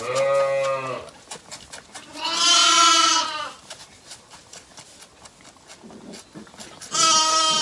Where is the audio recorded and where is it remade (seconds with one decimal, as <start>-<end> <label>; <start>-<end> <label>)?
0.0-2.6 recorded; 2.6-3.8 remade; 3.8-7.6 recorded